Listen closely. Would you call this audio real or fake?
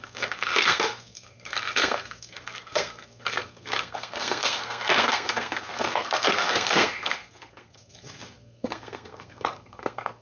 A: fake